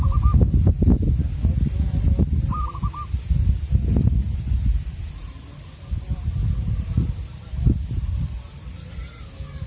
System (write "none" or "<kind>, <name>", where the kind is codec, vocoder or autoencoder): none